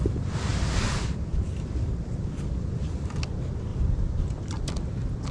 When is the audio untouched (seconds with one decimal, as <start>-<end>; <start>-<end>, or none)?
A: 0.0-0.5; 1.8-3.7; 4.6-5.3